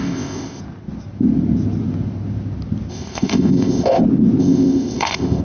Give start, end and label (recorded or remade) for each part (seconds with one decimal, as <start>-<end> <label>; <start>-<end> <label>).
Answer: 0.0-0.6 remade; 0.6-2.9 recorded; 2.9-4.0 remade; 4.0-4.4 recorded; 4.4-5.4 remade